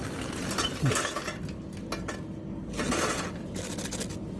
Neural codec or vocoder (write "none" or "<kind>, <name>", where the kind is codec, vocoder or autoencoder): none